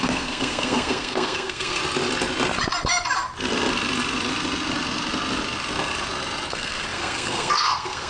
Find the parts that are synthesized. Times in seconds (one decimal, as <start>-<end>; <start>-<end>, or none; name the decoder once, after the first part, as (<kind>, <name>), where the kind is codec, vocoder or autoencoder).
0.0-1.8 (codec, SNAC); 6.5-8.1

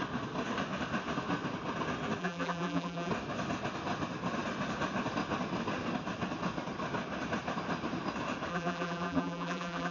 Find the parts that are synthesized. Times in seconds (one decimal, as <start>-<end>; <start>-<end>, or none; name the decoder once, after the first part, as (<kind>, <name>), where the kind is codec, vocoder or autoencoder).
2.2-3.1 (vocoder, BigVGAN v2); 8.5-9.9

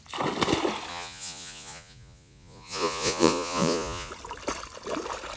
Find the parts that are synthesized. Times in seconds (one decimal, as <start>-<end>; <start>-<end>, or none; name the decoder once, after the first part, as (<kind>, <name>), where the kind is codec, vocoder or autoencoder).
0.9-4.1 (vocoder, Vocos)

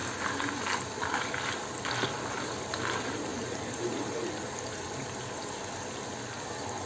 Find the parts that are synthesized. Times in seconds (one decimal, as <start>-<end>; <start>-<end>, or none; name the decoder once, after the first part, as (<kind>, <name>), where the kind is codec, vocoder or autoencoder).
3.3-4.3 (vocoder, BigVGAN v2)

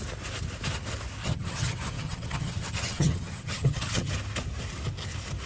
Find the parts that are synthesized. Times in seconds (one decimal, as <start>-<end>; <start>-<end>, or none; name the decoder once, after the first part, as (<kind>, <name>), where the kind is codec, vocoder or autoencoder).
1.2-4.1 (vocoder, HiFi-GAN)

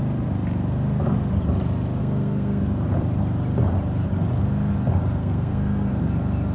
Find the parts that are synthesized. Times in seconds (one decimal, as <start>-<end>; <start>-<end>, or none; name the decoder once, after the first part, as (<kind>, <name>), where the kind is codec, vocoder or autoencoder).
2.0-2.6 (codec, SNAC); 5.2-5.9

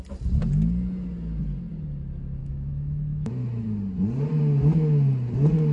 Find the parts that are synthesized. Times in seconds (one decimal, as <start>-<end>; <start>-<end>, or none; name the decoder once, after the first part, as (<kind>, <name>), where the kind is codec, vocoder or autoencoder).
2.4-3.3 (autoencoder, DAC-VAE)

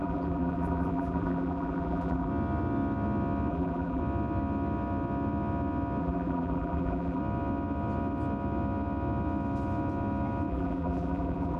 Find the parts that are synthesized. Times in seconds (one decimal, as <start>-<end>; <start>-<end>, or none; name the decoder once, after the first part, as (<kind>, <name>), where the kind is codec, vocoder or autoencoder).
0.0-2.3 (vocoder, BigVGAN v2); 3.5-4.0; 6.0-7.2; 10.5-11.6